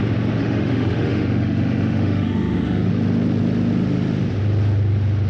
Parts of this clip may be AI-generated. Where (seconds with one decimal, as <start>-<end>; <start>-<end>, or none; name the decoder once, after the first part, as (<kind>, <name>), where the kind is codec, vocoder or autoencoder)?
0.4-2.9 (autoencoder, DAC-VAE)